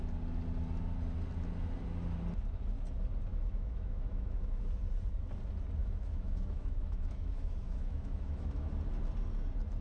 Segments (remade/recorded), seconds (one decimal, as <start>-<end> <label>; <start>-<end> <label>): 0.0-3.3 recorded; 3.3-4.6 remade; 4.6-5.8 recorded; 5.8-8.7 remade; 8.7-9.8 recorded